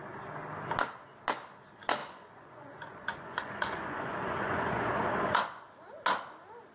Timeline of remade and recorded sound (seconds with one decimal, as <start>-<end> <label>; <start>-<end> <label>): 0.0-2.0 recorded; 2.0-5.1 remade; 5.1-6.7 recorded